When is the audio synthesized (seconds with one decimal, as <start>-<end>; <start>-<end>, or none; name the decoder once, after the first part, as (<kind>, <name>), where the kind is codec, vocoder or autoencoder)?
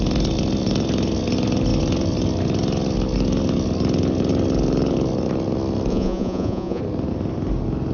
5.9-6.8 (vocoder, Vocos)